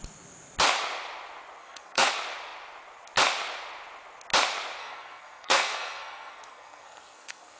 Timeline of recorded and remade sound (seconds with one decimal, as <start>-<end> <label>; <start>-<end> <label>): 0.0-1.6 recorded; 1.6-2.1 remade; 2.1-4.8 recorded; 4.8-7.6 remade